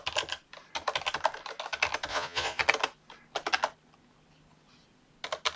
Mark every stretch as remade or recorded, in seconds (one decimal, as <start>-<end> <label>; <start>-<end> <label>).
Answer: 0.0-2.1 recorded; 2.1-2.6 remade; 2.6-5.6 recorded